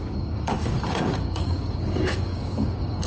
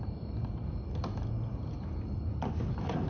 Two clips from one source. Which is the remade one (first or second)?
first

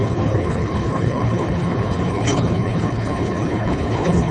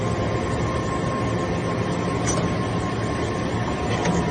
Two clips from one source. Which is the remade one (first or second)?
first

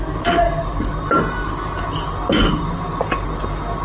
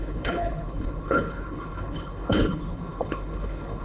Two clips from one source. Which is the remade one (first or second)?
second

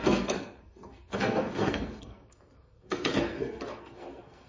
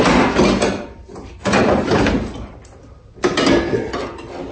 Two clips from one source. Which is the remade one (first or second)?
first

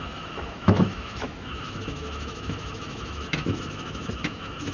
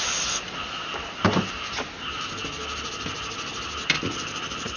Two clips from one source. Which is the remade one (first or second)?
first